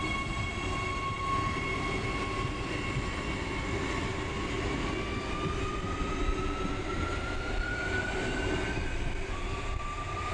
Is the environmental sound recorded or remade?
recorded